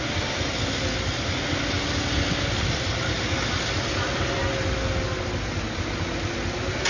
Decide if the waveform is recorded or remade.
recorded